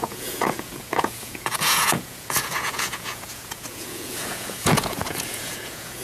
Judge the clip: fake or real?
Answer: fake